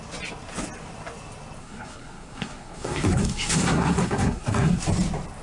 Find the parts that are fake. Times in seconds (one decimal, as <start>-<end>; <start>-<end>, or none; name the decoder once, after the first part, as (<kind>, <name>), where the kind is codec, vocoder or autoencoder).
1.6-4.8 (codec, SNAC)